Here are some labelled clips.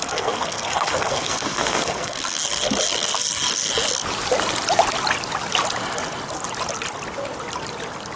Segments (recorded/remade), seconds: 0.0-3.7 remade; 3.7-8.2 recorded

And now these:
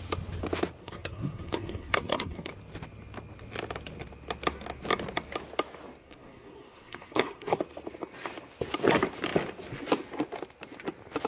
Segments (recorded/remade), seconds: 0.0-0.8 recorded; 0.8-2.5 remade; 2.5-6.0 recorded; 6.0-7.6 remade; 7.6-11.3 recorded

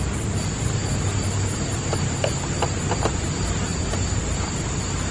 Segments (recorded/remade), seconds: 0.0-5.1 recorded

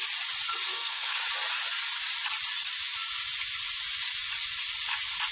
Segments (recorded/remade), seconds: 0.0-0.7 recorded; 0.7-1.2 remade; 1.2-5.3 recorded

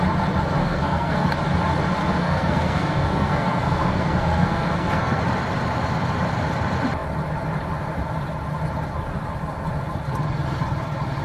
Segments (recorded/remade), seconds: 0.0-0.6 recorded; 0.6-1.3 remade; 1.3-2.0 recorded; 2.0-5.2 remade; 5.2-11.2 recorded